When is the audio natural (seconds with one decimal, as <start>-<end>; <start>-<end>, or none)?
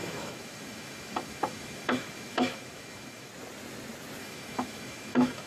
3.3-4.2